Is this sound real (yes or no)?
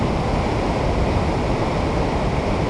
yes